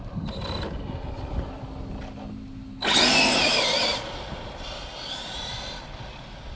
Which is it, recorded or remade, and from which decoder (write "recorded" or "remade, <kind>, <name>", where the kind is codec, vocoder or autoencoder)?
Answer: recorded